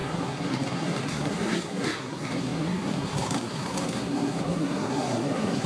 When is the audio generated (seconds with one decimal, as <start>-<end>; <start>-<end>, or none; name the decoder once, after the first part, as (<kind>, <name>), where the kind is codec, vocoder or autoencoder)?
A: 0.0-5.7 (codec, SNAC)